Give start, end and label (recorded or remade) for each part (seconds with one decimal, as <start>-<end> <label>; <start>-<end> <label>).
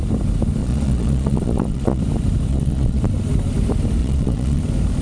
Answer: 0.0-0.6 recorded; 0.6-2.0 remade; 2.0-2.5 recorded; 2.5-3.0 remade; 3.0-4.0 recorded; 4.0-4.6 remade; 4.6-5.0 recorded